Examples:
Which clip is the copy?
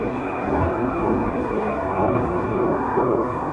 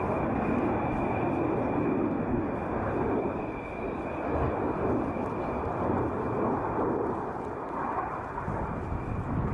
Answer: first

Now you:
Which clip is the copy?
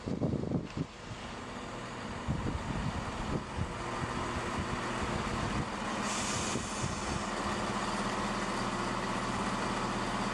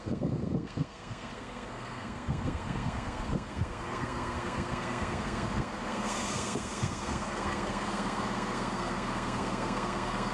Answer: second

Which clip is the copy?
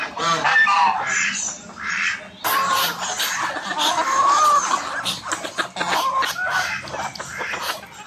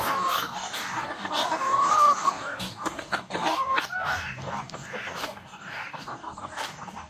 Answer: second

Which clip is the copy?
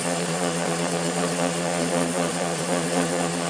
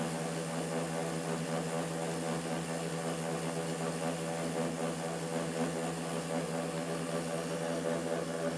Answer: first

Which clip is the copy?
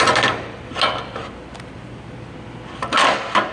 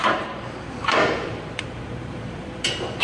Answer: second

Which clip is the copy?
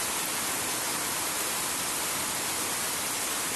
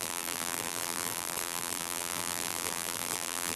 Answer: second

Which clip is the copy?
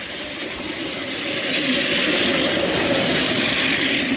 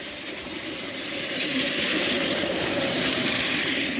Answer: second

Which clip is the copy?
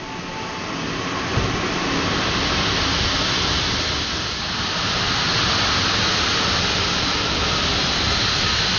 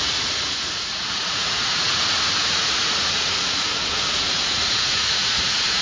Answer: second